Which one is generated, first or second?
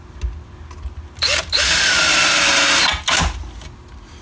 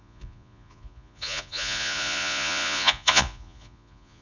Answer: second